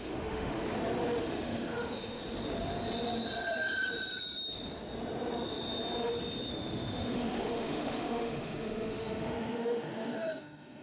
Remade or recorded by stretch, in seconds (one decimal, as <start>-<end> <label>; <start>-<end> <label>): 0.0-0.6 remade; 0.6-1.2 recorded; 1.2-2.2 remade; 2.2-6.5 recorded; 6.5-10.8 remade

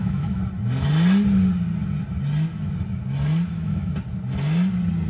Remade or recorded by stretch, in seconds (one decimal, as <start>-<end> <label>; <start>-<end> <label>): 0.0-0.4 remade; 0.4-3.5 recorded; 3.5-3.9 remade; 3.9-5.1 recorded

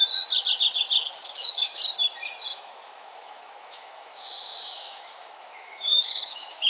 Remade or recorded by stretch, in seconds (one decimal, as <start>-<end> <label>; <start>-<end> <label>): 0.0-1.2 recorded; 1.2-1.8 remade; 1.8-2.5 recorded; 2.5-6.7 remade

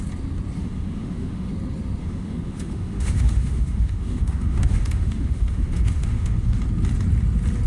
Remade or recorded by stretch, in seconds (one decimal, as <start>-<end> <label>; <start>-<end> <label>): 0.0-0.6 recorded; 0.6-1.5 remade; 1.5-2.0 recorded; 2.0-6.6 remade; 6.6-7.7 recorded

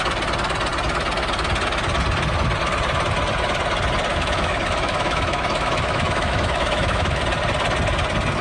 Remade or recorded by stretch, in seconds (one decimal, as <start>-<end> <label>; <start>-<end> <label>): 0.0-4.1 recorded; 4.1-7.2 remade; 7.2-8.4 recorded

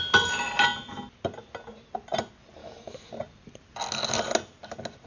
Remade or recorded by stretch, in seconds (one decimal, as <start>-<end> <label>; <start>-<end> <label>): 0.0-2.6 recorded; 2.6-3.1 remade; 3.1-5.1 recorded

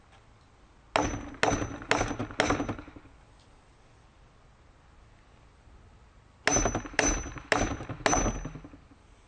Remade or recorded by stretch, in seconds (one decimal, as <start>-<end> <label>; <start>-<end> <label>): 0.0-9.3 recorded